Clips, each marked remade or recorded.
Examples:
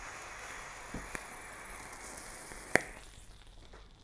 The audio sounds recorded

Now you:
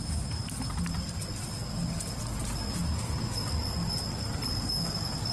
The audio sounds recorded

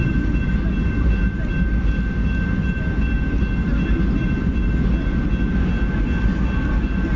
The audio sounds recorded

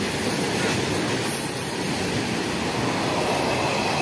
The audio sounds recorded